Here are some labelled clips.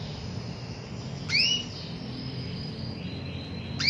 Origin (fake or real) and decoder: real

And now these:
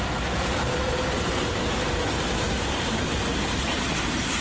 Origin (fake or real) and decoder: fake, vocoder, BigVGAN v2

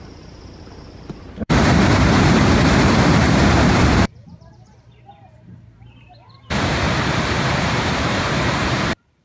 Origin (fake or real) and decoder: fake, vocoder, BigVGAN v2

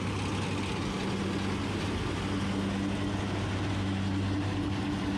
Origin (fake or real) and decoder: real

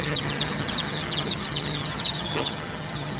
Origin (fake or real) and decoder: fake, vocoder, HiFi-GAN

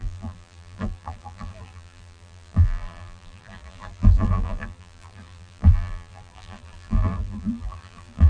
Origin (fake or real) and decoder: fake, vocoder, BigVGAN v2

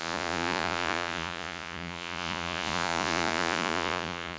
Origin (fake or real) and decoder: fake, vocoder, Vocos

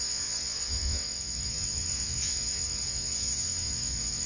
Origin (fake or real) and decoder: fake, vocoder, WaveNeXt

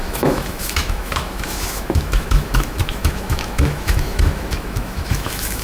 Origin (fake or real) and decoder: fake, autoencoder, DAC-VAE